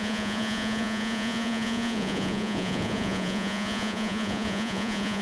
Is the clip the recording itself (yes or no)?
no